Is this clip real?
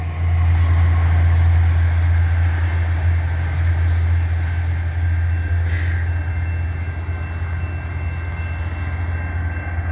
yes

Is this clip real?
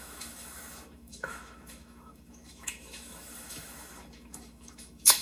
no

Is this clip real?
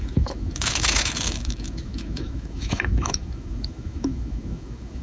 no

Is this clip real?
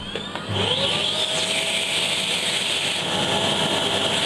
yes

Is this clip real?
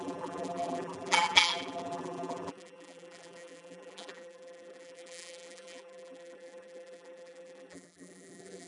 no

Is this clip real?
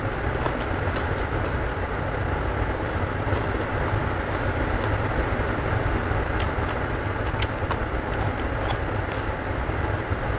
yes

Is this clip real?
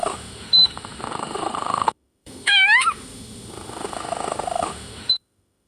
no